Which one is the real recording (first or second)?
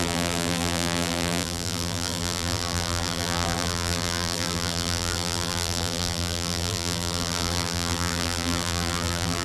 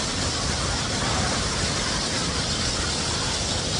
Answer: second